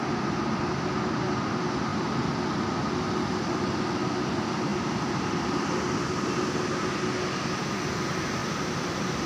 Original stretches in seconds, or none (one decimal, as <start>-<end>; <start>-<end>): 0.0-8.4